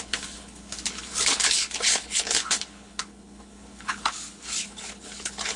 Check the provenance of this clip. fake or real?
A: fake